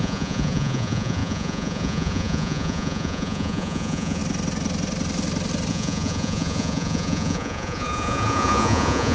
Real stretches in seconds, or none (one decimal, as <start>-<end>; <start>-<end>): 4.2-5.7